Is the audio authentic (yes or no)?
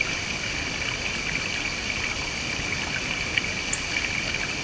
yes